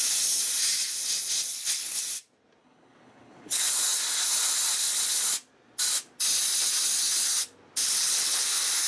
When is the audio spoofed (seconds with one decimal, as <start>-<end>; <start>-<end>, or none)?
1.5-2.0; 2.6-3.6; 7.8-8.4